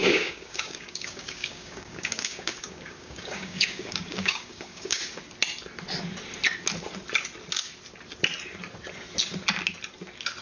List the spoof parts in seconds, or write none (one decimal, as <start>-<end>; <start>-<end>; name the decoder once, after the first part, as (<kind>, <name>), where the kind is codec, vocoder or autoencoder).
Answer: 0.0-5.0 (codec, DAC)